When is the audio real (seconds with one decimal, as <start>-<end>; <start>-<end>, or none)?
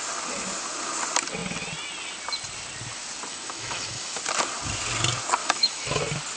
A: 0.0-3.3; 4.2-5.4; 6.0-6.4